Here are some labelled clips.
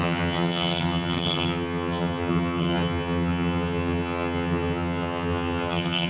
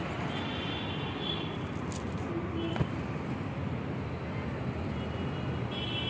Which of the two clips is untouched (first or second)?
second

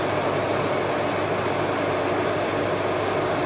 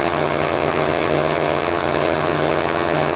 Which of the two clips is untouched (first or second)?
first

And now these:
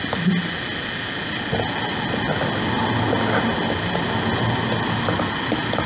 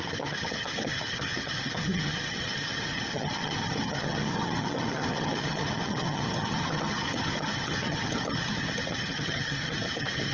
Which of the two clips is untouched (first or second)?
first